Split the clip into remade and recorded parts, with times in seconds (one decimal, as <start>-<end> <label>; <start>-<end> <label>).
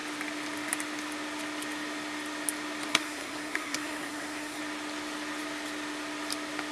0.0-2.9 recorded; 2.9-4.6 remade; 4.6-6.7 recorded